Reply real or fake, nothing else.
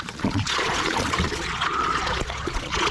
fake